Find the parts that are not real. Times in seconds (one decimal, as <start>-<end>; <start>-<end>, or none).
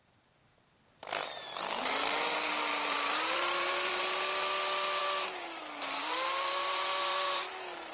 2.7-4.0; 5.0-5.6; 6.0-7.5